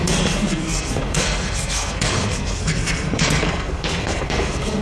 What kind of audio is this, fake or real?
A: fake